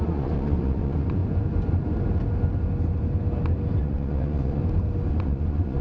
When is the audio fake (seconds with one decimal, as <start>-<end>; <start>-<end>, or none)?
0.0-1.2; 3.8-4.6; 5.1-5.8